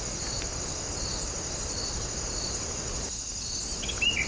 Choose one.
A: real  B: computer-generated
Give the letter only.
A